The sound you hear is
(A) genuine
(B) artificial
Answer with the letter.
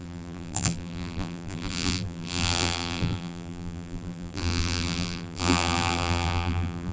B